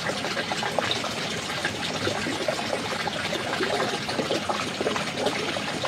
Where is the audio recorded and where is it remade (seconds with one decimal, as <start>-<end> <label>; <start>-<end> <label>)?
0.0-5.9 recorded